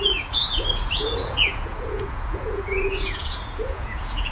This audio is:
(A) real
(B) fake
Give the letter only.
B